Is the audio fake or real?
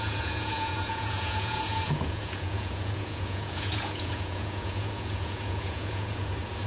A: fake